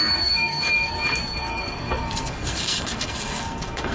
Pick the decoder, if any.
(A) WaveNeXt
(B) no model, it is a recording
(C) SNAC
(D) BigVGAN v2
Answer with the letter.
C